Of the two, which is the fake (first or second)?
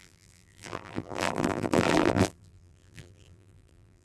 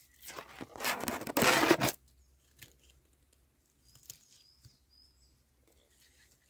first